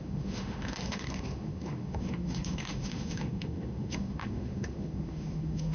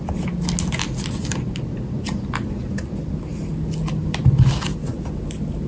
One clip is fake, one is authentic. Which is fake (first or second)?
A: first